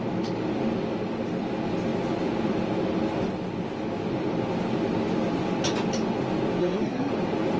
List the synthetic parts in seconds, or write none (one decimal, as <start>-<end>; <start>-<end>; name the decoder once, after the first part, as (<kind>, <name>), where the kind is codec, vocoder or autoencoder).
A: 6.6-7.1 (codec, SNAC)